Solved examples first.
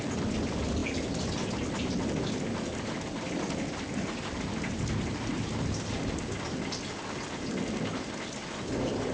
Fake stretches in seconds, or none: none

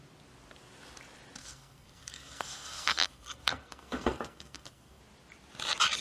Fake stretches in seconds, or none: 1.4-5.0 (codec, SNAC)

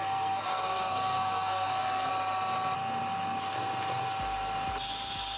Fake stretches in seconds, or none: 0.0-2.1 (codec, SNAC)

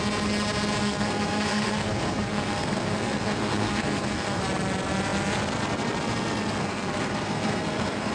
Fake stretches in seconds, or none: 0.8-4.4 (codec, SNAC); 6.6-8.1